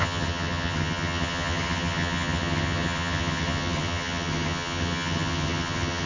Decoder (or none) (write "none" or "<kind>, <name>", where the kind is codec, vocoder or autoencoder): vocoder, HiFi-GAN